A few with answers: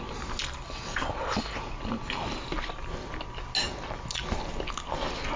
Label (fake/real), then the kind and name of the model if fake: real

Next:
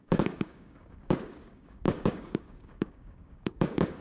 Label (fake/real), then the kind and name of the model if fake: fake, codec, DAC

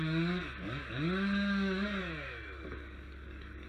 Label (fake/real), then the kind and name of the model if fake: fake, codec, DAC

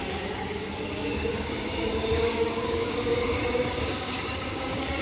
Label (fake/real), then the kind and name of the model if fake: fake, codec, DAC